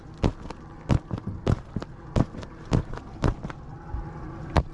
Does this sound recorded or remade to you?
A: recorded